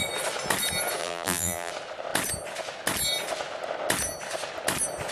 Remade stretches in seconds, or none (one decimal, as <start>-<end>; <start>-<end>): 1.0-1.7